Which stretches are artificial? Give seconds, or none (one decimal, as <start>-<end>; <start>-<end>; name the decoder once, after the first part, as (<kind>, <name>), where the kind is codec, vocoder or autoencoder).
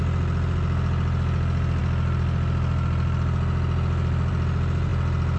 none